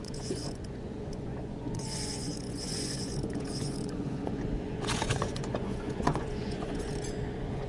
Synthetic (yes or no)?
yes